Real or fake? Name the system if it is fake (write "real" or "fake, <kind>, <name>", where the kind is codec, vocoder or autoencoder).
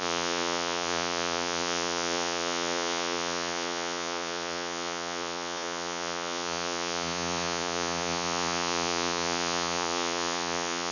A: fake, vocoder, Vocos